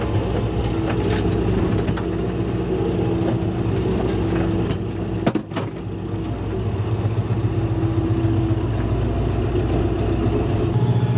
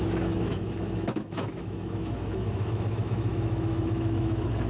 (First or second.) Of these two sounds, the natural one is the first